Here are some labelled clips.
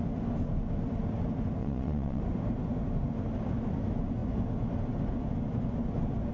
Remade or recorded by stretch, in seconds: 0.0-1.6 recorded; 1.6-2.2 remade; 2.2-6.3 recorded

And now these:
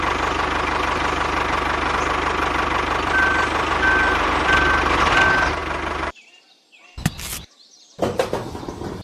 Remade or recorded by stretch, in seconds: 0.0-9.0 recorded

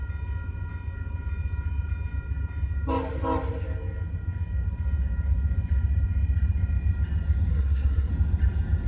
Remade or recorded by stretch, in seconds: 0.0-7.5 recorded; 7.5-8.1 remade; 8.1-8.9 recorded

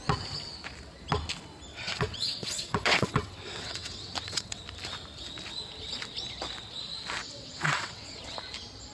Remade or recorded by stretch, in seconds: 0.0-1.7 recorded; 1.7-4.6 remade; 4.6-7.2 recorded; 7.2-8.2 remade; 8.2-8.9 recorded

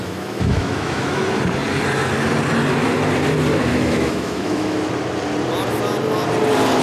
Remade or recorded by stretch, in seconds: 0.0-1.2 remade; 1.2-3.7 recorded; 3.7-4.9 remade; 4.9-6.8 recorded

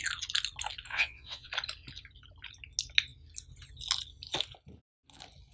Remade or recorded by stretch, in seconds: 0.0-0.9 recorded; 0.9-1.5 remade; 1.5-5.5 recorded

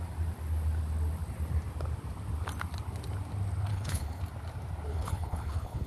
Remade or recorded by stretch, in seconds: 0.0-3.7 recorded; 3.7-4.2 remade; 4.2-4.9 recorded; 4.9-5.9 remade